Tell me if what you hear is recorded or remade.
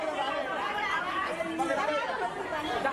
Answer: remade